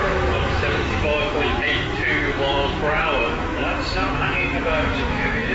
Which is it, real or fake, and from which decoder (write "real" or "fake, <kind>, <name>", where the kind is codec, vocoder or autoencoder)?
fake, autoencoder, DAC-VAE